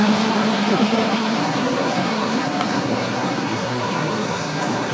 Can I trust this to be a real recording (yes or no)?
no